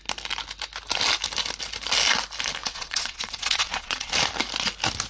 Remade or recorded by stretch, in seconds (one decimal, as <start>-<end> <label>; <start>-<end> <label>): 0.0-2.6 recorded; 2.6-4.1 remade; 4.1-5.1 recorded